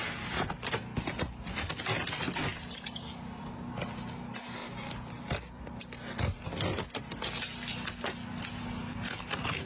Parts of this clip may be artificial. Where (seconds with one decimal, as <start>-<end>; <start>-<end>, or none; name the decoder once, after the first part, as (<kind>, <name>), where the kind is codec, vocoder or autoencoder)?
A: none

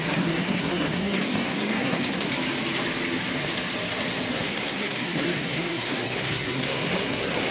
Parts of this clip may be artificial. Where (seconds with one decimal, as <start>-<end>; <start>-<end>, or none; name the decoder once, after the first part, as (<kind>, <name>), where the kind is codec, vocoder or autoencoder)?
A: 0.0-2.3 (codec, SNAC); 4.3-7.5